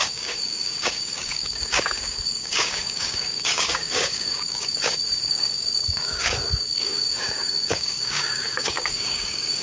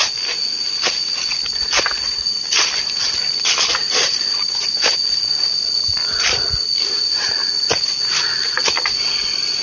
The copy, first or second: first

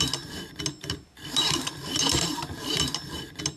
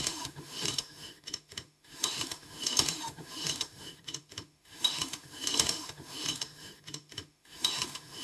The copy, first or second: second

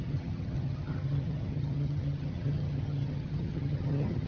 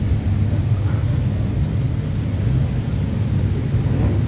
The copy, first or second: first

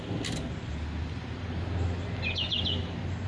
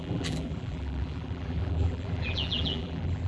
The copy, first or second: second